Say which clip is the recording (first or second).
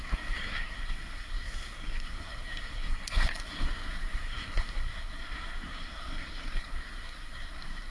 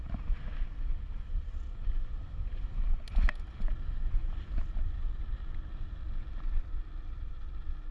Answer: second